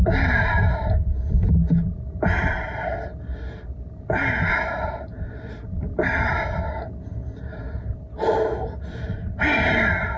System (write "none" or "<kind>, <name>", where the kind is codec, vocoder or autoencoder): none